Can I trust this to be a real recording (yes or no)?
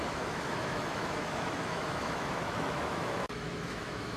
no